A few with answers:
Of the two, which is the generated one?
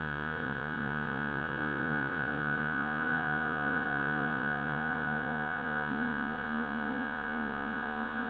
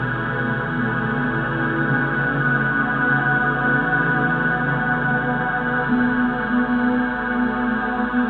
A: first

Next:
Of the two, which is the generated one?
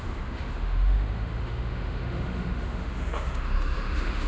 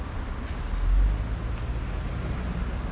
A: first